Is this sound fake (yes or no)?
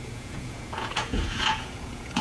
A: yes